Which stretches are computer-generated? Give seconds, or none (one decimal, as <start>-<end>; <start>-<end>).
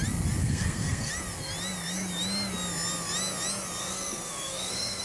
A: 0.4-1.1; 3.8-5.0